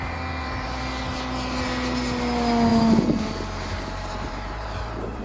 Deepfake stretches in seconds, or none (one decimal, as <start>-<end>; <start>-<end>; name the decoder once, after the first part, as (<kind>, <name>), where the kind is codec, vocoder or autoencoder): 2.7-5.2 (vocoder, BigVGAN v2)